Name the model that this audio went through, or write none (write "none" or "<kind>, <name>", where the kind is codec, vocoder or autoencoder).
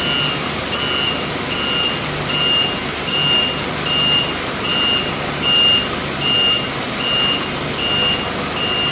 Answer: none